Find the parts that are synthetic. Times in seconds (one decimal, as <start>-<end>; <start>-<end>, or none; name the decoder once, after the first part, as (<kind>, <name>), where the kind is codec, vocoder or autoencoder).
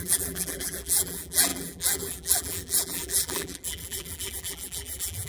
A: 0.0-5.3 (vocoder, BigVGAN v2)